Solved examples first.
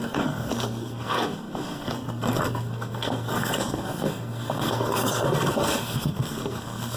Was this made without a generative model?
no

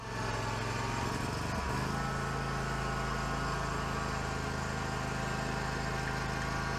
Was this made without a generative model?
yes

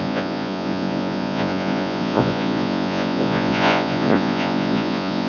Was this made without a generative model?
no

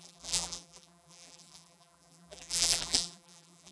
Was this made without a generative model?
no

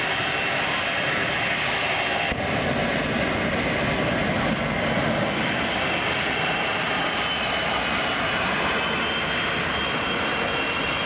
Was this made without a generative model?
yes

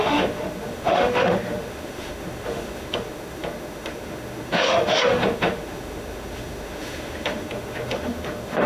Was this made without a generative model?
no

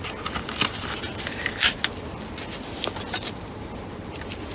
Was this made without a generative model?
yes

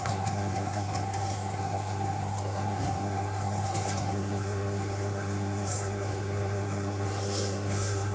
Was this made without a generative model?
no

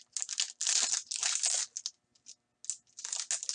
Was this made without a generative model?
yes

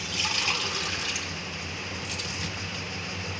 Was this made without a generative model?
yes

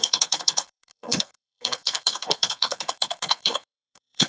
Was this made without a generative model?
no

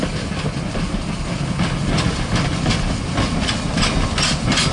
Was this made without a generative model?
yes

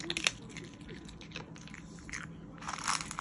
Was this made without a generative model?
yes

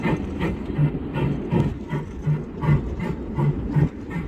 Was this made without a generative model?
yes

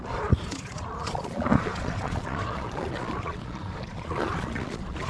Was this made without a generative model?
no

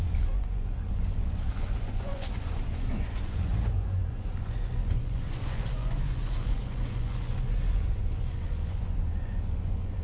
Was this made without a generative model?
no